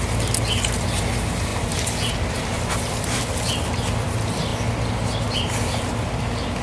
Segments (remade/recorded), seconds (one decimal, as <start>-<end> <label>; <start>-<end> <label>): 0.0-6.6 recorded